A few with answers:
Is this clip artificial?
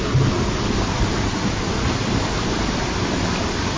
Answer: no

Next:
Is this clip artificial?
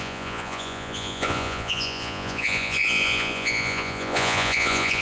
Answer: yes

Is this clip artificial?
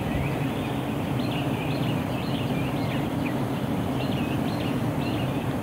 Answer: no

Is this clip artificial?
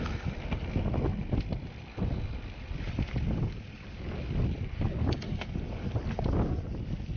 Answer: no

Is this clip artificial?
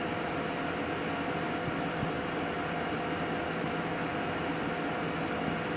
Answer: no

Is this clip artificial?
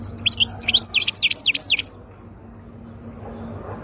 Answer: no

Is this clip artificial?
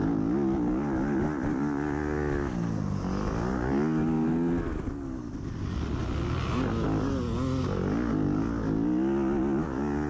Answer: no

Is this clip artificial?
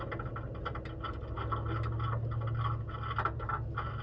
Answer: no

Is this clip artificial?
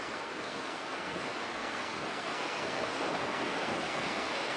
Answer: yes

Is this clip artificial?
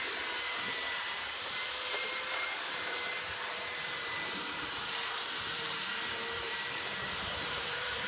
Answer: yes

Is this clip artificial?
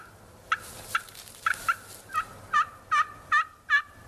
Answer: yes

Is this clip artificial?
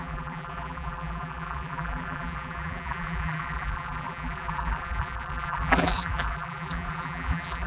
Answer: yes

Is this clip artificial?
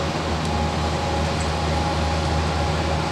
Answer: no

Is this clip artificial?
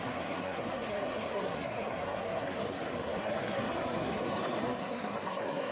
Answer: yes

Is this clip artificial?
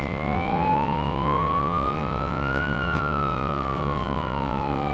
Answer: yes